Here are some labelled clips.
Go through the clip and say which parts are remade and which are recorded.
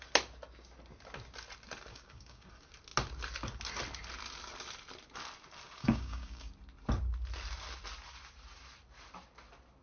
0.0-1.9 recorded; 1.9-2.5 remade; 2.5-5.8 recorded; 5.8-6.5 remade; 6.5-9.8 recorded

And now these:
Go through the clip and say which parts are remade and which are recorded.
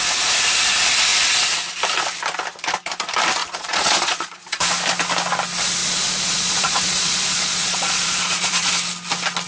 0.0-3.4 recorded; 3.4-4.6 remade; 4.6-5.8 recorded; 5.8-8.7 remade; 8.7-9.5 recorded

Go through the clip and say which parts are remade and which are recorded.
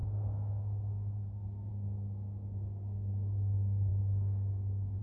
0.0-5.0 remade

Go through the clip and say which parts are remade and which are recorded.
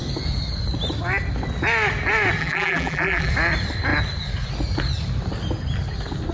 0.0-2.4 recorded; 2.4-3.3 remade; 3.3-6.3 recorded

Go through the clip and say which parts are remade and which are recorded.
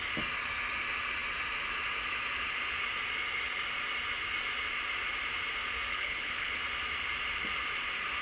0.0-5.9 recorded; 5.9-6.6 remade; 6.6-8.2 recorded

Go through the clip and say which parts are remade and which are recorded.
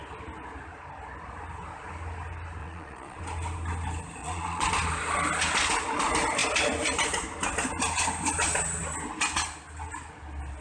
0.0-2.6 recorded; 2.6-3.2 remade; 3.2-4.2 recorded; 4.2-4.7 remade; 4.7-10.6 recorded